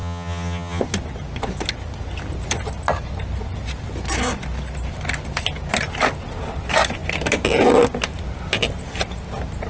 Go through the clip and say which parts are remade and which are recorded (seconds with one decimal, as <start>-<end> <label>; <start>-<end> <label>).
0.0-0.8 remade; 0.8-9.7 recorded